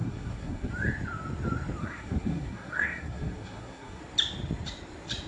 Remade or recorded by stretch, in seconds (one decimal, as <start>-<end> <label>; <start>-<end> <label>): 0.0-0.7 remade; 0.7-1.8 recorded; 1.8-4.0 remade; 4.0-5.3 recorded